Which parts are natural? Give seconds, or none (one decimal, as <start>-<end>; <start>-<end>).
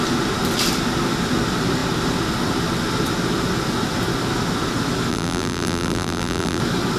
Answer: 0.0-5.1; 6.6-7.0